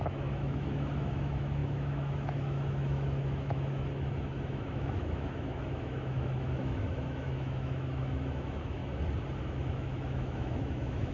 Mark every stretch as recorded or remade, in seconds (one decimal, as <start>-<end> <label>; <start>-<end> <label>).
0.0-8.8 remade; 8.8-9.4 recorded; 9.4-11.1 remade